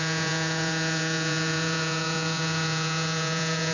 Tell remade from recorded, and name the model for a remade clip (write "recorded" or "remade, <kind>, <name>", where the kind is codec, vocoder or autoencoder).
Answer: remade, vocoder, Vocos